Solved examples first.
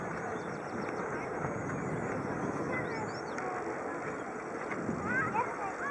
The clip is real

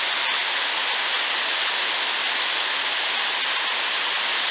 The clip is real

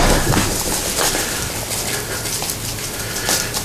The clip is real